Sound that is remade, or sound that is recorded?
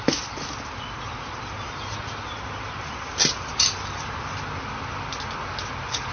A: recorded